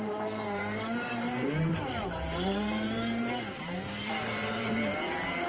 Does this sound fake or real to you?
fake